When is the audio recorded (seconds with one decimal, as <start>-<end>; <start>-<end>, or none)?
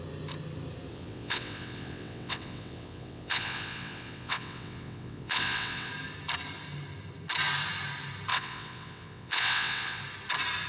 0.0-0.9; 5.9-8.3; 10.0-10.7